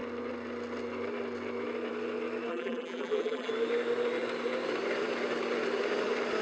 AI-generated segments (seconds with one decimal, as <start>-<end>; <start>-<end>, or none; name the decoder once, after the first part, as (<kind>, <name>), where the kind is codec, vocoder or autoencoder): 2.5-3.5 (vocoder, BigVGAN v2)